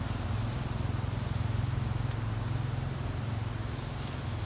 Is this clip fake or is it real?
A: real